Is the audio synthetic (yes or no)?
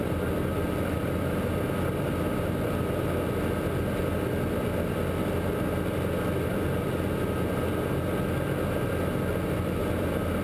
no